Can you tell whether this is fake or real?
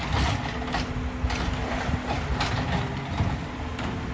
real